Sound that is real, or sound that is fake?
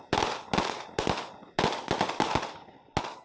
real